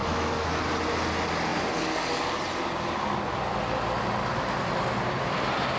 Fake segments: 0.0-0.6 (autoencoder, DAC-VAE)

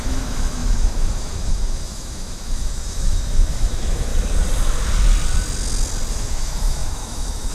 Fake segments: 0.0-4.1 (autoencoder, DAC-VAE); 6.1-7.5

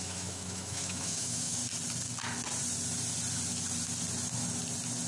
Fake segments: 0.0-1.6 (autoencoder, DAC-VAE)

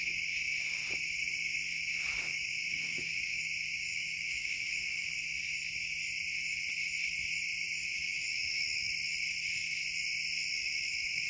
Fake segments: 2.3-3.4 (autoencoder, DAC-VAE); 3.9-5.1; 7.9-8.9; 10.5-11.3